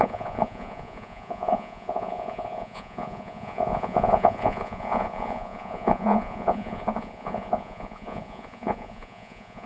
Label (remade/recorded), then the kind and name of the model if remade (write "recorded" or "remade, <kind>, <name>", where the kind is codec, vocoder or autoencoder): remade, vocoder, Vocos